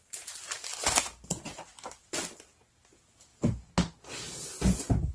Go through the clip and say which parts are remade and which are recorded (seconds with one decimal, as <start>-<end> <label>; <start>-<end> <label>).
0.0-3.3 remade; 3.3-5.1 recorded